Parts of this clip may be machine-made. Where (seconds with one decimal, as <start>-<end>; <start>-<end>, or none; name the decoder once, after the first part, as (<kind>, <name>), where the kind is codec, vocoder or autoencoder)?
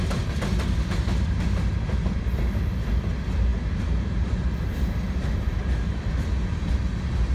none